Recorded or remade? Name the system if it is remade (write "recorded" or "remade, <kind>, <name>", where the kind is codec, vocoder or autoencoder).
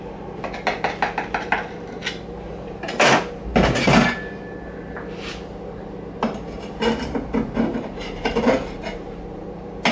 recorded